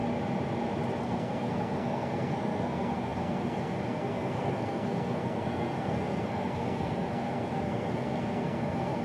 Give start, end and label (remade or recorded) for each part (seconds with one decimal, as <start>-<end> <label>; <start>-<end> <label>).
0.0-1.0 recorded; 1.0-9.0 remade